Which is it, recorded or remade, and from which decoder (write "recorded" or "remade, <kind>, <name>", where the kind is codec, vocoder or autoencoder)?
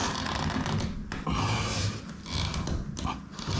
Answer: recorded